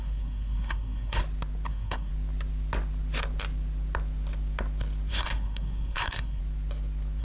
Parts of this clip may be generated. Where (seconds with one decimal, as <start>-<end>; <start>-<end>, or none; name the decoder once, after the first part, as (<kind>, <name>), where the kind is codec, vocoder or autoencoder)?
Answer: 0.0-1.2 (codec, SNAC); 1.7-2.1; 5.1-6.4